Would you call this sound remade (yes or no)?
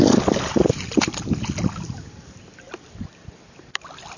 no